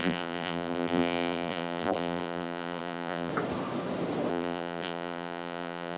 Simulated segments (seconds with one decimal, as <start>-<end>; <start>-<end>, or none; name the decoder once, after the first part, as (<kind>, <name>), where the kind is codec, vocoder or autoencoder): 0.0-3.3 (vocoder, BigVGAN v2); 4.3-6.0